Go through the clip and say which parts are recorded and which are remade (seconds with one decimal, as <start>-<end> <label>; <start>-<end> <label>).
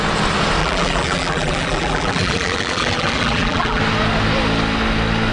0.0-0.6 recorded; 0.6-3.8 remade; 3.8-5.3 recorded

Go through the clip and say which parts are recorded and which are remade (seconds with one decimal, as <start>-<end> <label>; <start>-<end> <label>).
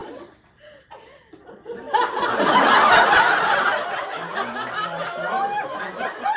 0.0-3.8 remade; 3.8-4.3 recorded; 4.3-5.0 remade; 5.0-6.4 recorded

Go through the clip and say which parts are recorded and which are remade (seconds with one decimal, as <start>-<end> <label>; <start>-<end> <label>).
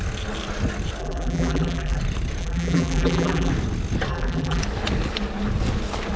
0.0-1.0 recorded; 1.0-2.0 remade; 2.0-2.4 recorded; 2.4-3.5 remade; 3.5-4.1 recorded; 4.1-4.6 remade; 4.6-6.2 recorded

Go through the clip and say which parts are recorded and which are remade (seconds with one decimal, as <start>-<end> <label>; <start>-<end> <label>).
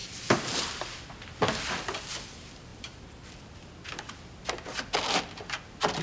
0.0-1.7 remade; 1.7-6.0 recorded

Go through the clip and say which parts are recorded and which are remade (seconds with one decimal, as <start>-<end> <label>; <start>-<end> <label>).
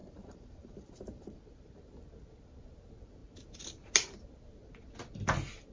0.0-1.4 remade; 1.4-5.7 recorded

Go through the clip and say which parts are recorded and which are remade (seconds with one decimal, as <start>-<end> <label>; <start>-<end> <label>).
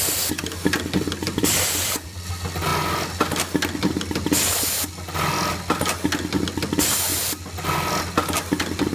0.0-1.2 recorded; 1.2-2.3 remade; 2.3-8.9 recorded